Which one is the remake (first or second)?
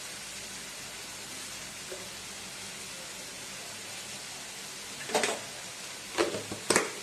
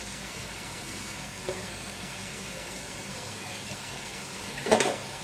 second